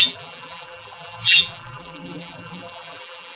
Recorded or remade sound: remade